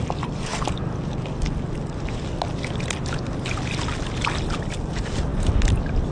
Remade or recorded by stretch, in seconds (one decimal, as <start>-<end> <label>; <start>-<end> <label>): 0.0-6.1 recorded